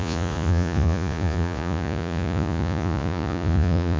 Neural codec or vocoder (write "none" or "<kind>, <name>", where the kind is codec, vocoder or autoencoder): vocoder, Vocos